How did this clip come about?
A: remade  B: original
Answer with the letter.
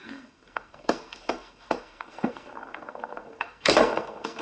A